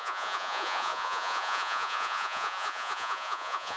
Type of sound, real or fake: fake